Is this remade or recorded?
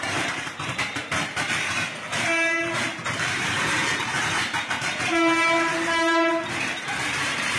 remade